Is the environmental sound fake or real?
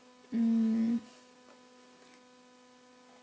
real